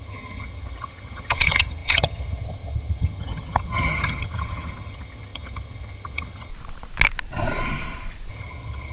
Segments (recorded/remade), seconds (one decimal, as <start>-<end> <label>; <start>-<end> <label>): 0.0-6.5 remade; 6.5-8.3 recorded; 8.3-8.9 remade